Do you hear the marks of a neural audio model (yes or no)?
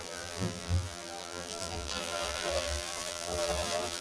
yes